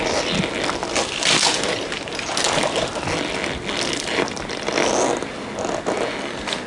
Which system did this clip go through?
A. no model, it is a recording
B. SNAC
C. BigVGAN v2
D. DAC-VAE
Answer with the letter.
A